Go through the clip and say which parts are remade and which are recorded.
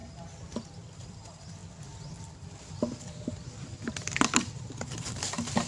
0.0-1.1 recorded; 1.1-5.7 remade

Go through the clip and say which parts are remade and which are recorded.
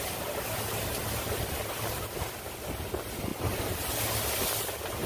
0.0-5.1 recorded